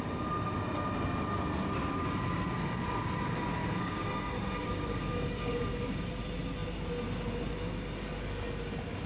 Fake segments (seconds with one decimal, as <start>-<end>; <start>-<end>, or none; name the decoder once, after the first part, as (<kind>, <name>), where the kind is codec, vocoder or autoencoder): 3.6-6.0 (codec, DAC)